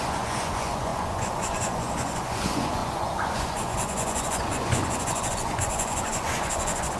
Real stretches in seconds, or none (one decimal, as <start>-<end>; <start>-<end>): none